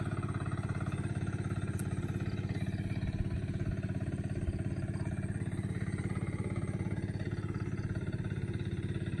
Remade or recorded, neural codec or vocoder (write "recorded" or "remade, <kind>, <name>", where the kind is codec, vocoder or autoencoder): recorded